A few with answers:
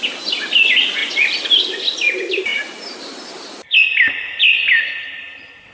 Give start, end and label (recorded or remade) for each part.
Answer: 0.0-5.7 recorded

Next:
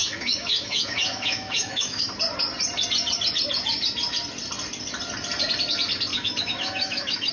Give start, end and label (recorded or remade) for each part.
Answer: 0.0-2.0 remade; 2.0-6.1 recorded; 6.1-7.3 remade

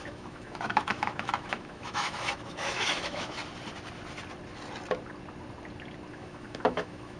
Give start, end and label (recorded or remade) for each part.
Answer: 0.0-3.4 remade; 3.4-6.1 recorded; 6.1-7.2 remade